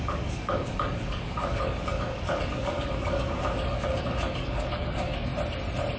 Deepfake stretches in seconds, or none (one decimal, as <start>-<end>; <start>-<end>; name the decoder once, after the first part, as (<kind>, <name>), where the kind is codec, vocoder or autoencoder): 0.0-5.3 (codec, DAC)